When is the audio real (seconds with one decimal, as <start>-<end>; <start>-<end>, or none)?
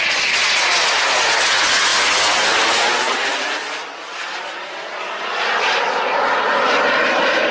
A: 0.0-7.5